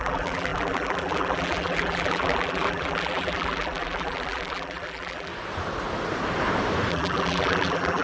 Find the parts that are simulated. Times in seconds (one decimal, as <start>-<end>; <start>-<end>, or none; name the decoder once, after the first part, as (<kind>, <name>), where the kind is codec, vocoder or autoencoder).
0.0-5.3 (vocoder, BigVGAN v2); 6.9-8.0